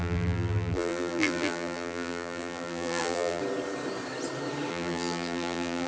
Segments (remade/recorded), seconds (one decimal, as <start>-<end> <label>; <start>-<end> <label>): 0.0-3.4 remade; 3.4-4.7 recorded; 4.7-5.9 remade